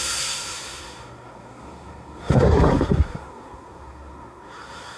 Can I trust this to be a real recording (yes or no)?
no